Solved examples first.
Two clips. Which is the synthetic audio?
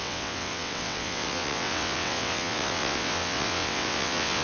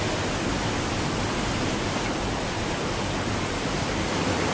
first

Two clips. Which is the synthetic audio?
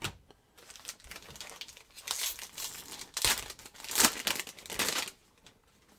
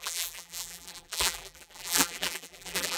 second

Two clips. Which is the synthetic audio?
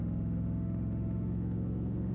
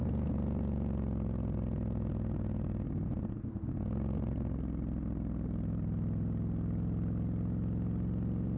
first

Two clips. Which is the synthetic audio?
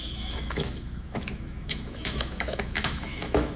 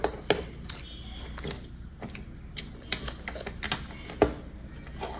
first